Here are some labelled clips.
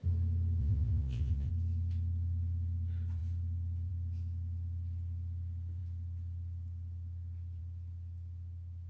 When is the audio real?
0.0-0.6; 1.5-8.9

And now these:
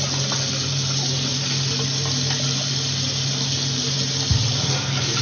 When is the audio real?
0.0-5.2

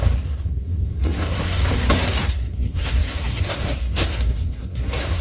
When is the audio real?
1.6-2.3

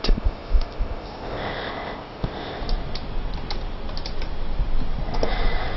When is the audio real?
2.6-5.8

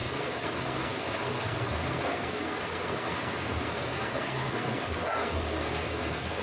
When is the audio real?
none

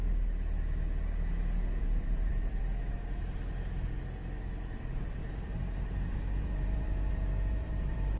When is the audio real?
0.0-1.8; 2.6-5.2

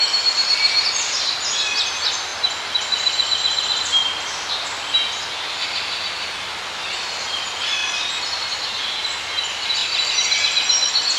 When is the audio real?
0.0-11.2